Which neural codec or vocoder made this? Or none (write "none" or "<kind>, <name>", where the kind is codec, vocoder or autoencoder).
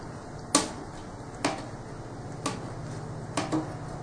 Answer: none